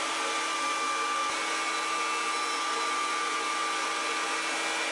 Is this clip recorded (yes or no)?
yes